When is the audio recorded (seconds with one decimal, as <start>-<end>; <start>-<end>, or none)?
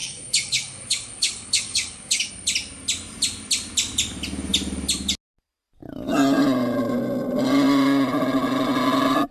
2.3-9.3